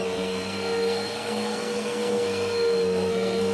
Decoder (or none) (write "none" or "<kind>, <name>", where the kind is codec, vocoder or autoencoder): codec, SNAC